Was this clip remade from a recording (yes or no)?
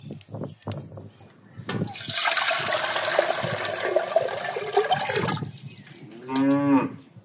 no